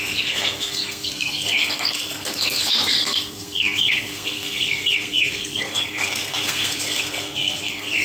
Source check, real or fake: fake